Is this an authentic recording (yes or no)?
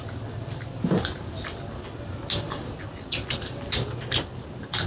yes